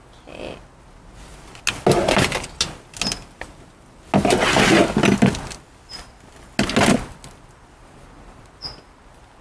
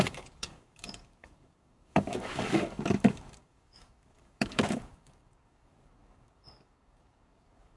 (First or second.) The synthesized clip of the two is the second